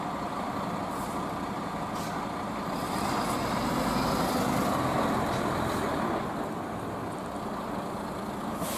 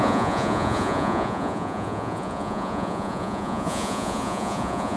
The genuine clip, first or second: first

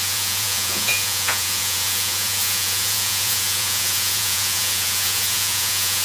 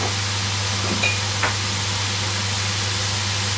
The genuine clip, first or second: second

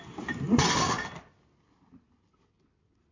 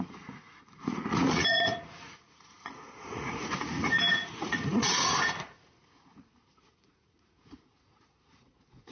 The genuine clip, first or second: first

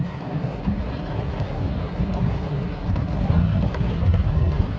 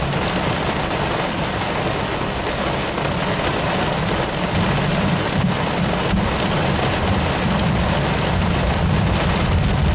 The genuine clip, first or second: second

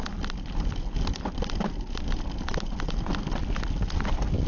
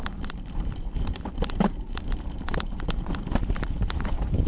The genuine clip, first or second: first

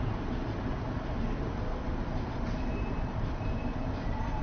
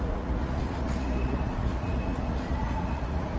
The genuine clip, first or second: first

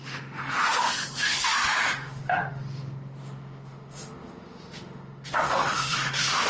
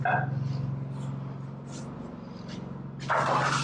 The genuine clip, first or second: second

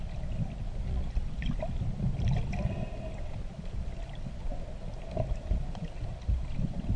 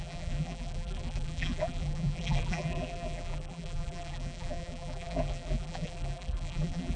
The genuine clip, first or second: first